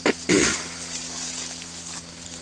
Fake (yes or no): no